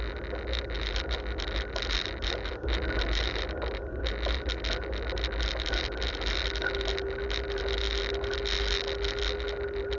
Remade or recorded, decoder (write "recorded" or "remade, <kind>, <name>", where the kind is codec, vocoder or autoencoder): recorded